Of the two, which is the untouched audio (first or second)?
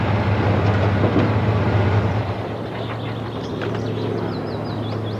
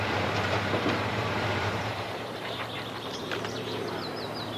first